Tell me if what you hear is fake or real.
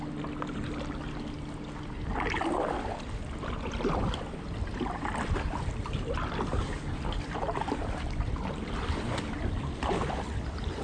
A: real